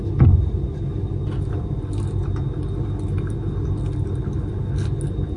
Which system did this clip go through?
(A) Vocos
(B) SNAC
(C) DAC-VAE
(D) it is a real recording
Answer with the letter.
D